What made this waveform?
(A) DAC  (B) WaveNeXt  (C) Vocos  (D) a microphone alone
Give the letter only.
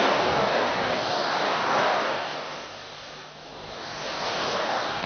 A